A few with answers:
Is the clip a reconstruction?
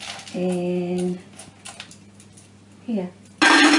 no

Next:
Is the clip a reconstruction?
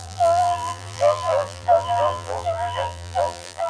yes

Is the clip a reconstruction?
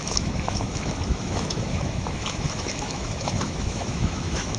yes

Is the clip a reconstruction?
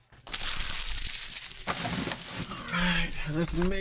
no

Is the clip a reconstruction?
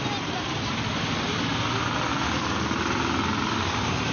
no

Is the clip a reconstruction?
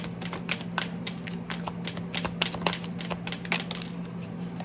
no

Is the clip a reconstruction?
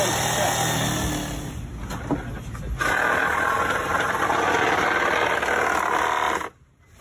no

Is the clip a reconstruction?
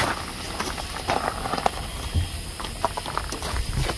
no